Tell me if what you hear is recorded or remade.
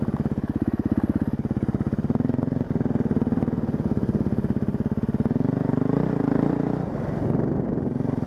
recorded